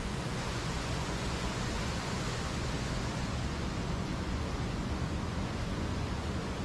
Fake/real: fake